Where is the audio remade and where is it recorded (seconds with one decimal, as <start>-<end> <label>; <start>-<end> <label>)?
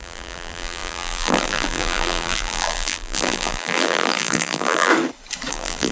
0.0-4.9 remade; 4.9-5.5 recorded; 5.5-5.9 remade